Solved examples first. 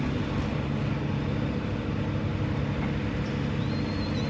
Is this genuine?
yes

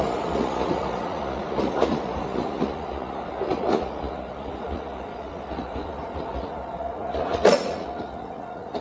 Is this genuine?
no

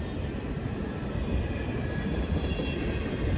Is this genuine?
yes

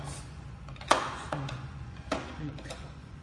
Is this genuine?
no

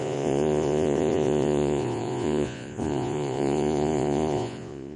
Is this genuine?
no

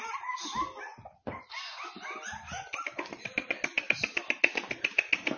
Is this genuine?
yes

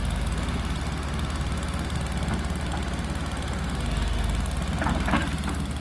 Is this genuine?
yes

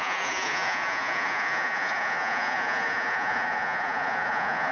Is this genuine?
no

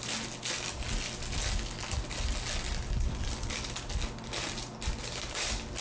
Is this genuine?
yes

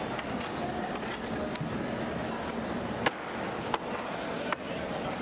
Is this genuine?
yes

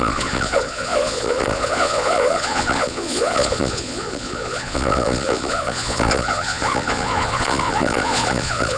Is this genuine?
no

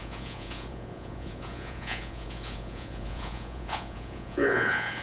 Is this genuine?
no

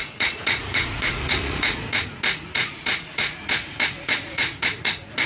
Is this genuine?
no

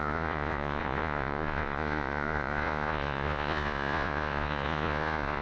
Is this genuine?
no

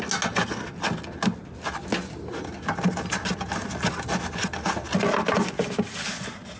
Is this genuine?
yes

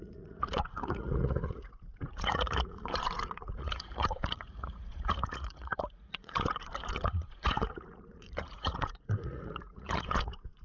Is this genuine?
no